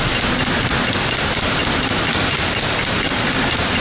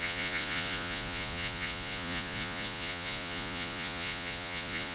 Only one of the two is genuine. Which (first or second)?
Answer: first